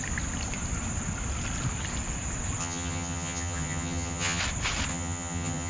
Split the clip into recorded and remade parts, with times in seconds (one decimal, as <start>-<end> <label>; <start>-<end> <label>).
0.0-2.6 recorded; 2.6-4.4 remade; 4.4-4.9 recorded; 4.9-5.7 remade